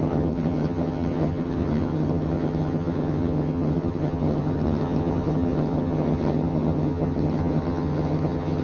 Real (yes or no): no